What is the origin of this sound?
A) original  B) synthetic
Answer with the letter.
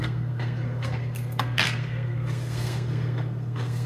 B